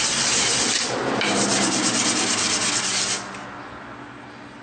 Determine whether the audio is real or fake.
real